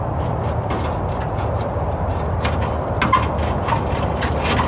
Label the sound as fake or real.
real